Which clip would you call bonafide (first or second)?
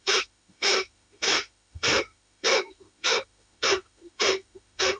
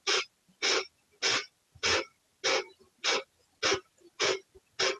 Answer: second